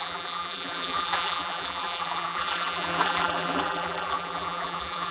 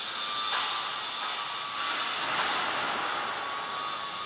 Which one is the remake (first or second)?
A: first